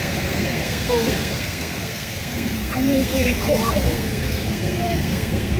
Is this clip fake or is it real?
fake